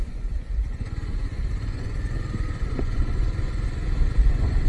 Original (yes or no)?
no